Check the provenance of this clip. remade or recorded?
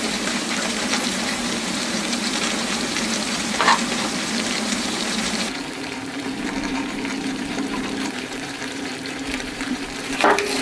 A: remade